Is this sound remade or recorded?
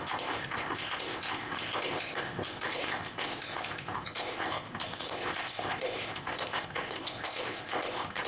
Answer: remade